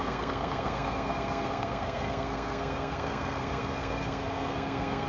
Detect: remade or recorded remade